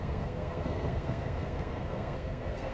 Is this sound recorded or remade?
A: remade